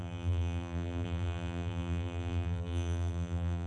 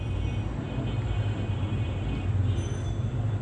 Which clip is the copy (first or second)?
first